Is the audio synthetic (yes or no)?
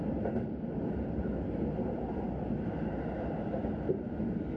no